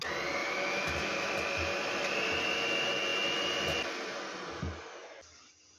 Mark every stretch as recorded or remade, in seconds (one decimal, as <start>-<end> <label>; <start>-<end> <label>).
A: 0.0-0.4 recorded; 0.4-1.3 remade; 1.3-5.8 recorded